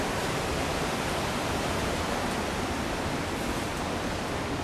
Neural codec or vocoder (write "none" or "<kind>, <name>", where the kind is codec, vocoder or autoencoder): vocoder, BigVGAN v2